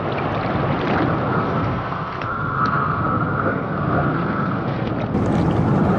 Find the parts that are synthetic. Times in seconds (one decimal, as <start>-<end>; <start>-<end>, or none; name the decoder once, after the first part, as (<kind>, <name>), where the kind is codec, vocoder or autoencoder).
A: 1.3-4.9 (codec, SNAC)